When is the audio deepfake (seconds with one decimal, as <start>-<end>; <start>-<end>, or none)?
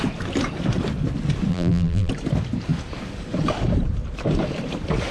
1.5-2.1